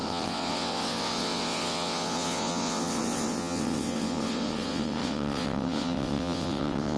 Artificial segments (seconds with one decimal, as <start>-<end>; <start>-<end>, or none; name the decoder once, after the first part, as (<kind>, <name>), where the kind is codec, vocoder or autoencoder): 0.0-7.0 (vocoder, WaveNeXt)

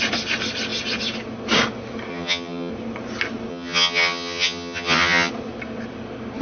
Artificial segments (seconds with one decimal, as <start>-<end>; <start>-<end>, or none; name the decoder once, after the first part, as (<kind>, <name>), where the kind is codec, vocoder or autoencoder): 2.1-2.7 (vocoder, HiFi-GAN); 3.5-5.3

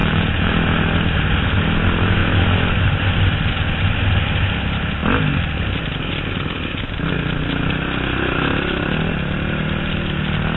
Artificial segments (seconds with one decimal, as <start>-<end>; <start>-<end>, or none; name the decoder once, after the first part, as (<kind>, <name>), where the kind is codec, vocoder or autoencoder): 0.0-0.5 (vocoder, Vocos)

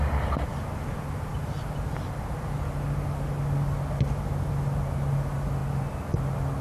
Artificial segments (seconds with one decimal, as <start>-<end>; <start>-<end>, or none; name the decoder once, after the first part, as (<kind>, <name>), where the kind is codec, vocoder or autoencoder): none

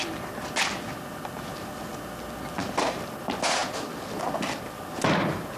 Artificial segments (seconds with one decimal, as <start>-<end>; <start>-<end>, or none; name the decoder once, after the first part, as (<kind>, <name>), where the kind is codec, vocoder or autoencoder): none

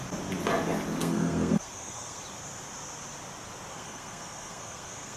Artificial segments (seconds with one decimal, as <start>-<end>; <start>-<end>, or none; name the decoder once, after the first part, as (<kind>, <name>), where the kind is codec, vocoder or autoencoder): 1.0-2.2 (codec, SNAC); 3.7-5.2

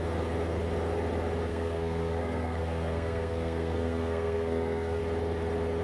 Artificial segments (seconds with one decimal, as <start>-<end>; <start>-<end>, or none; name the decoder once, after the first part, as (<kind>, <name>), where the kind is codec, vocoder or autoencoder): 1.5-5.0 (codec, SNAC)